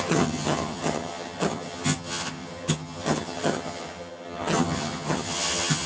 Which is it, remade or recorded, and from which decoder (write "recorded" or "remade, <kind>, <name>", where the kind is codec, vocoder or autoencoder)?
remade, vocoder, HiFi-GAN